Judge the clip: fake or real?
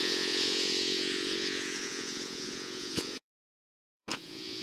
fake